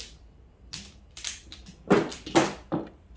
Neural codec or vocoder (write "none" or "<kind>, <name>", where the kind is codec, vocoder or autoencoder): none